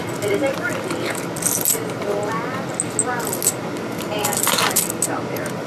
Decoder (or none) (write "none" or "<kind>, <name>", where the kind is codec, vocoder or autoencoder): none